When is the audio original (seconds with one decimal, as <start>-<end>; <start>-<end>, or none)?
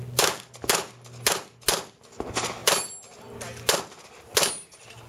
0.0-5.1